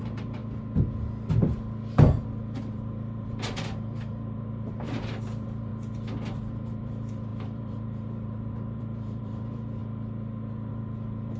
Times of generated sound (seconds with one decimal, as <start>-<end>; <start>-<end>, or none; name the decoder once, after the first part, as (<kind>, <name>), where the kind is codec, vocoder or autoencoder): 0.0-0.4 (vocoder, BigVGAN v2); 2.7-5.7; 6.4-9.8; 10.7-11.4